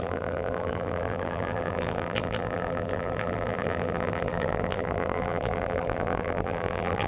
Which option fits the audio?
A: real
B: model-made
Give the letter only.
B